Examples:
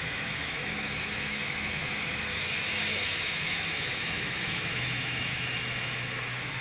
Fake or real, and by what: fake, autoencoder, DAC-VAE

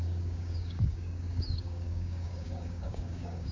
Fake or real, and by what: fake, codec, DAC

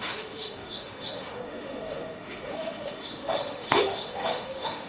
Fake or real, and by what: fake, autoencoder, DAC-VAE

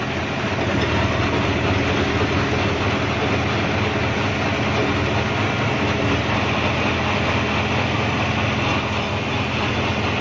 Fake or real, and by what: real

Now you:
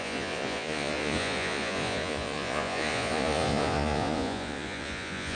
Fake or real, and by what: fake, vocoder, Vocos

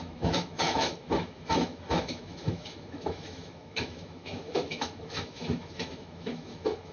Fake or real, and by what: fake, autoencoder, DAC-VAE